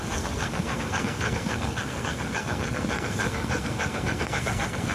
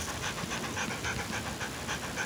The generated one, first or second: first